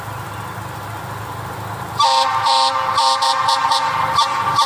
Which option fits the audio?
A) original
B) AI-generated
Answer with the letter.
A